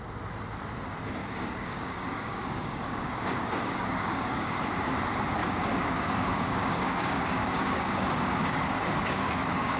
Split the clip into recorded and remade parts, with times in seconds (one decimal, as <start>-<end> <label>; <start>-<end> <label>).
0.0-1.2 recorded; 1.2-4.6 remade; 4.6-5.4 recorded; 5.4-9.8 remade